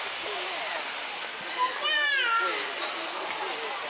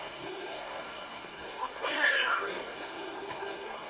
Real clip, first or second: first